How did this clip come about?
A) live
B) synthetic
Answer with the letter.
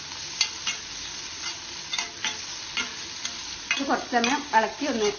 A